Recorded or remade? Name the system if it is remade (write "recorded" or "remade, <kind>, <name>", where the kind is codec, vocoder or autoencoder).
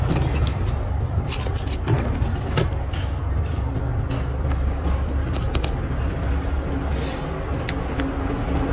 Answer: recorded